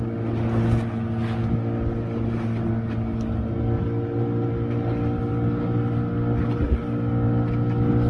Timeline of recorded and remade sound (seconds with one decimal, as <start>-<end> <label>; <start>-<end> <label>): 0.0-8.1 recorded